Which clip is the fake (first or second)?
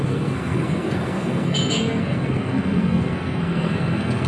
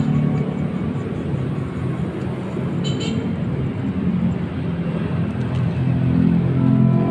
first